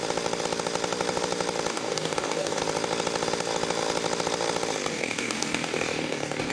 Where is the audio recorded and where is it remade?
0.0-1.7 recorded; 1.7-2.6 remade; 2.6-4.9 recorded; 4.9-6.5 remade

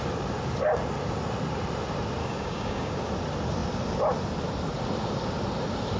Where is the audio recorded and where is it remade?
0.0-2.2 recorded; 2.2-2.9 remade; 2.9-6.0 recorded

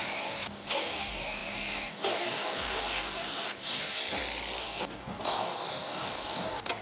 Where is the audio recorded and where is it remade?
0.0-4.0 remade; 4.0-4.6 recorded; 4.6-6.8 remade

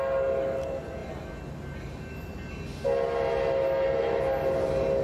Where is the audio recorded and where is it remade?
0.0-5.0 recorded

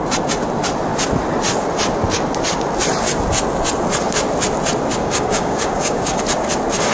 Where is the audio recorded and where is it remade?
0.0-5.0 recorded; 5.0-6.2 remade; 6.2-6.9 recorded

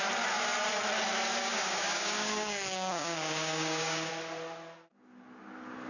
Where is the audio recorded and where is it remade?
0.0-1.4 recorded; 1.4-4.1 remade; 4.1-5.9 recorded